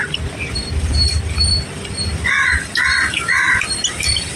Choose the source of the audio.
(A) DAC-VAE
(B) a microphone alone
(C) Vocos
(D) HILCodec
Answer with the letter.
B